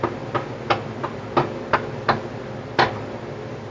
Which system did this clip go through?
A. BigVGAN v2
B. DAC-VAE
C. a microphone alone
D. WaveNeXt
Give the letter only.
C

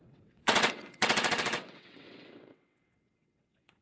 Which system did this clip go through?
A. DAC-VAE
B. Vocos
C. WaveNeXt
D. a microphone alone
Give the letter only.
C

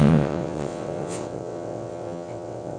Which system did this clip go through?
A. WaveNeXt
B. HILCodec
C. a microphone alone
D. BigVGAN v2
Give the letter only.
A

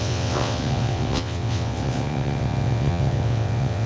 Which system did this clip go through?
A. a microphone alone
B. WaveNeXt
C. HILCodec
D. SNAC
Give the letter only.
B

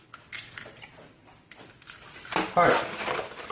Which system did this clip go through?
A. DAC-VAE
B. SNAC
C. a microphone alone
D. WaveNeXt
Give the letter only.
C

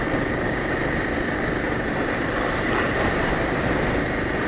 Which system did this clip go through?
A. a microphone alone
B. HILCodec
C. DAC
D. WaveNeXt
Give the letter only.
A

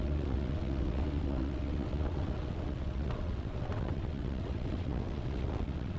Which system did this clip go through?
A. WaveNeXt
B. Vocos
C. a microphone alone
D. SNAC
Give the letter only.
A